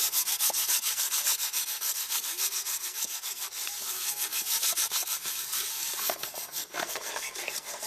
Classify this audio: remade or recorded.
remade